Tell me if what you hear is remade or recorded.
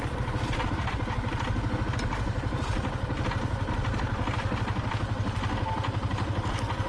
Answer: recorded